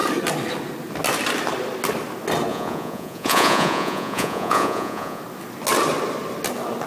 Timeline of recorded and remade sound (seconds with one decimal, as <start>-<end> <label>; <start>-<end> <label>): 0.0-2.5 recorded; 2.5-5.2 remade; 5.2-6.9 recorded